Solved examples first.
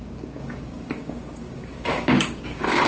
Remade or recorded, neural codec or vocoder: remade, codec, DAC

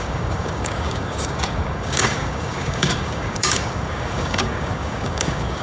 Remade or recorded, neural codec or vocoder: remade, codec, DAC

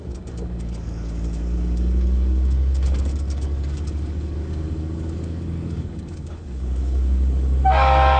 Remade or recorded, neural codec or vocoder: remade, codec, DAC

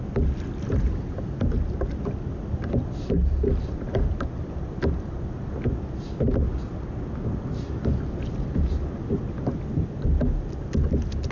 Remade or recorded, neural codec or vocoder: recorded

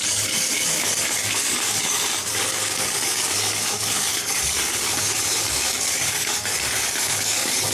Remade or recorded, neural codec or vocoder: remade, codec, DAC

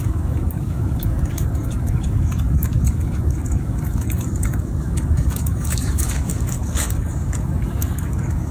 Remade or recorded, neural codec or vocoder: remade, codec, DAC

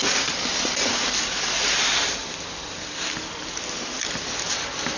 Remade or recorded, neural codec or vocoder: recorded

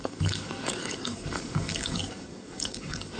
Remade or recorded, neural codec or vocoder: remade, codec, DAC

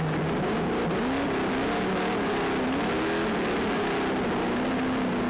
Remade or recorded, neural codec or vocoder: recorded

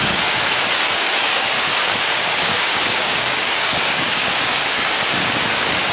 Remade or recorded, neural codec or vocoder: remade, codec, DAC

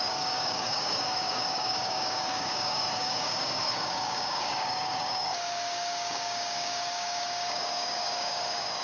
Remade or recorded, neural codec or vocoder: remade, codec, DAC